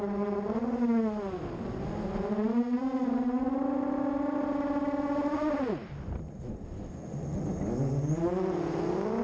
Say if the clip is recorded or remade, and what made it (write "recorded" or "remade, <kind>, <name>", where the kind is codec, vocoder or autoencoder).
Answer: recorded